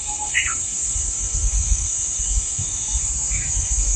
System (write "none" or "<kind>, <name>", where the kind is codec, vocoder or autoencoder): codec, SNAC